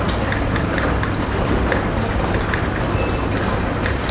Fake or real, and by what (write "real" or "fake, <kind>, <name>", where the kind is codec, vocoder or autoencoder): real